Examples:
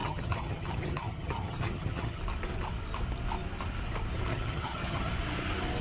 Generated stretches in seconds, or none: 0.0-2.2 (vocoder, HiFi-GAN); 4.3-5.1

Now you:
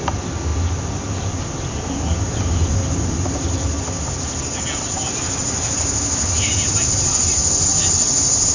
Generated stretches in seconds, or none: none

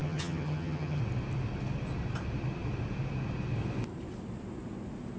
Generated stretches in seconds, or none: 0.0-1.0 (vocoder, HiFi-GAN)